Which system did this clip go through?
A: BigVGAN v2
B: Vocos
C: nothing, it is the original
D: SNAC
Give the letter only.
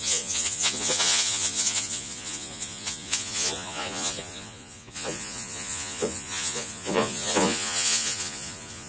B